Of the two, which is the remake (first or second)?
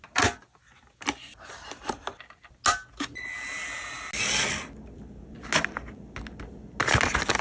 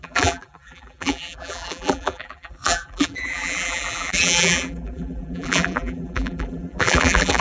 second